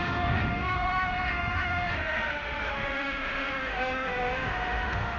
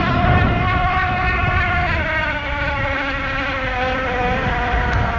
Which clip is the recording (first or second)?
second